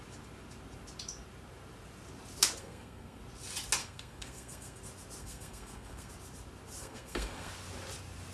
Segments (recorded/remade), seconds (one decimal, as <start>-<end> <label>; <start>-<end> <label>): 0.0-2.6 recorded; 2.6-3.2 remade; 3.2-3.8 recorded; 3.8-4.8 remade; 4.8-5.2 recorded; 5.2-6.1 remade; 6.1-6.8 recorded; 6.8-7.5 remade; 7.5-8.3 recorded